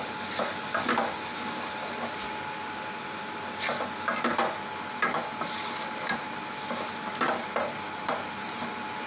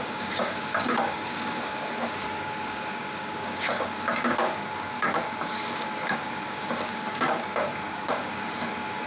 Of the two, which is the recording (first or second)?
first